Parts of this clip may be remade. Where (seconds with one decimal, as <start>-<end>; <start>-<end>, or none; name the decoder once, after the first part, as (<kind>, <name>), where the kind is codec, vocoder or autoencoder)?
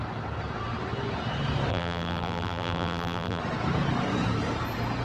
1.7-3.4 (vocoder, BigVGAN v2)